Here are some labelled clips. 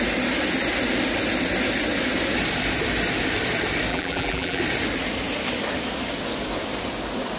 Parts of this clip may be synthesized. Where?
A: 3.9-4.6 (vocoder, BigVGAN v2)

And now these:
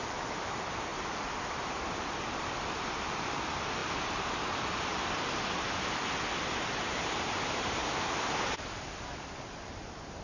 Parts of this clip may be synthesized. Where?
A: 0.0-4.9 (vocoder, BigVGAN v2); 6.7-7.8; 9.4-10.2

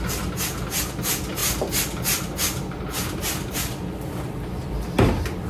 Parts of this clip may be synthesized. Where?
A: none

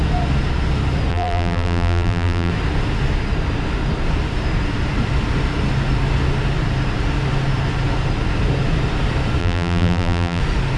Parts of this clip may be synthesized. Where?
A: 1.1-2.5 (vocoder, BigVGAN v2); 9.4-10.4

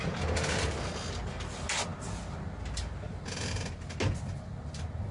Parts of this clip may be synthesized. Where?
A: none